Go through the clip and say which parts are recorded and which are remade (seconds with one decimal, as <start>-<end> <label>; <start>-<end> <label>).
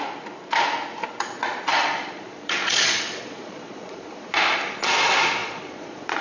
0.0-1.7 recorded; 1.7-4.3 remade; 4.3-5.4 recorded; 5.4-6.2 remade